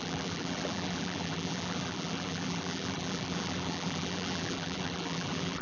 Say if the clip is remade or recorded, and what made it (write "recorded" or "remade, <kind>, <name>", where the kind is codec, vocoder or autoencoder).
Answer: remade, vocoder, BigVGAN v2